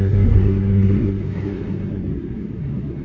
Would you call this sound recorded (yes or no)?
no